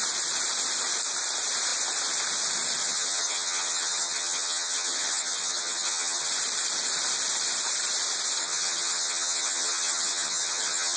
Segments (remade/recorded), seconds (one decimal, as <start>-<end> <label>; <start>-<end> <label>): 0.0-2.8 recorded; 2.8-6.3 remade; 6.3-8.4 recorded; 8.4-11.0 remade